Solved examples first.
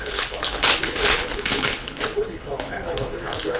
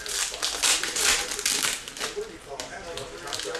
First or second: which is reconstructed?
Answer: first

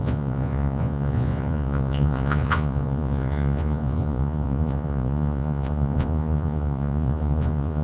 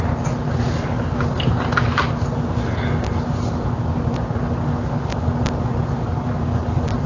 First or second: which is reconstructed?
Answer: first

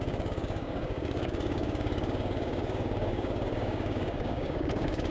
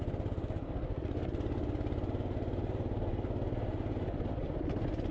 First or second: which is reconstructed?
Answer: first